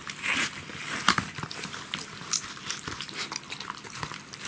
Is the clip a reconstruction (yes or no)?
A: no